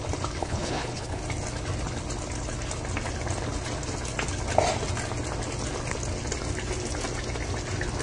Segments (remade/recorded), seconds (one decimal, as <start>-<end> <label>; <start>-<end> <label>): 0.0-0.4 recorded; 0.4-1.2 remade; 1.2-8.0 recorded